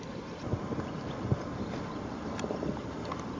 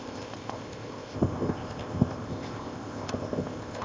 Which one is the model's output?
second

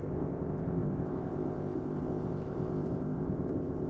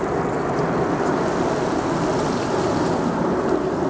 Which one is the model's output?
first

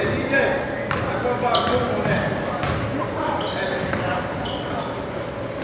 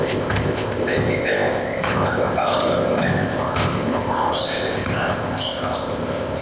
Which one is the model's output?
second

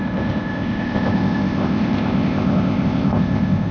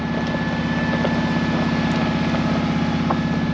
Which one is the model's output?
first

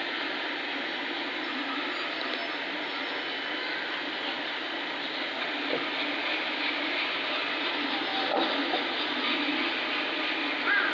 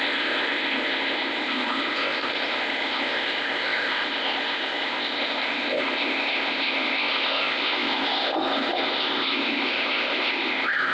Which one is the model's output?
second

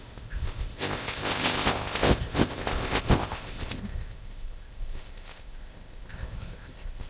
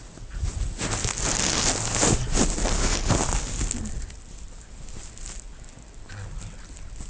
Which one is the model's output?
first